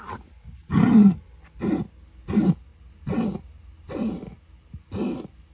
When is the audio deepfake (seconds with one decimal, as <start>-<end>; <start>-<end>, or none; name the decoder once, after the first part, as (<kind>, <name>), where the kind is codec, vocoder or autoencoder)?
none